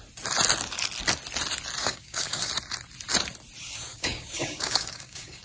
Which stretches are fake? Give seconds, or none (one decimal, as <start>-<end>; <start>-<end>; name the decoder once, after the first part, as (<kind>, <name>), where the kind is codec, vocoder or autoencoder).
1.8-2.5 (codec, DAC); 3.6-5.4